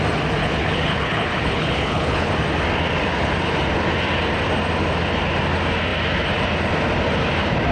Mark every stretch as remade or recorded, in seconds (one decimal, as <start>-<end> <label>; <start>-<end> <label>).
0.0-0.4 recorded; 0.4-2.3 remade; 2.3-7.7 recorded